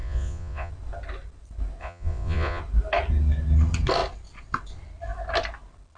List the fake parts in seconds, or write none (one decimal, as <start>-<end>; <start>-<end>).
0.0-0.7; 1.8-2.6